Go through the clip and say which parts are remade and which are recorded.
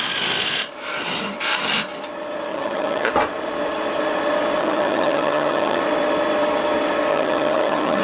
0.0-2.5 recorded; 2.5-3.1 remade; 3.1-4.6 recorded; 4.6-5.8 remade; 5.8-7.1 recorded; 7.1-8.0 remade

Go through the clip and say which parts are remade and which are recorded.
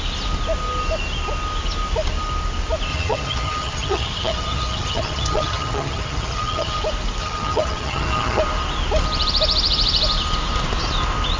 0.0-2.9 recorded; 2.9-6.8 remade; 6.8-7.2 recorded; 7.2-8.4 remade; 8.4-11.4 recorded